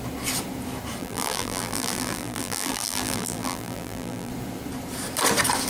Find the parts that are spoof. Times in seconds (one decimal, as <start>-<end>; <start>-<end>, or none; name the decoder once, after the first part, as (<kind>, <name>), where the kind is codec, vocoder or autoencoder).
1.0-4.3 (vocoder, BigVGAN v2)